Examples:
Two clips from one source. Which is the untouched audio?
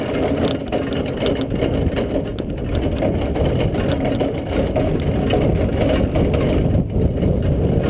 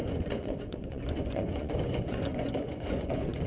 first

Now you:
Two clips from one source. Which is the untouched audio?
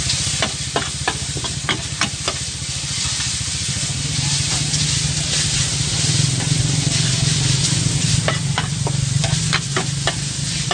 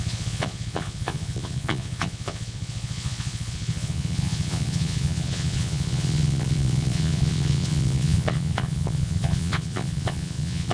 first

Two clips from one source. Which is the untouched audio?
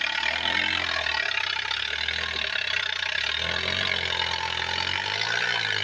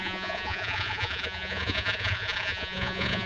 first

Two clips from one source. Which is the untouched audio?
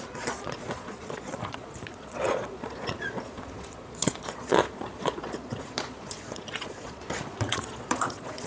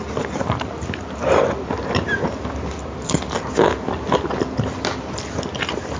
second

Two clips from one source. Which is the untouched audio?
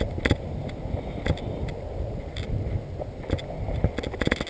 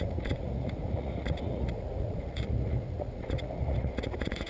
first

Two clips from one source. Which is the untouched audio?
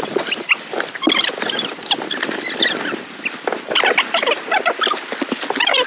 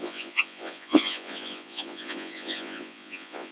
first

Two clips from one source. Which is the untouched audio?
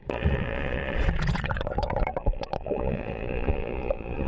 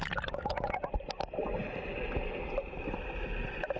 second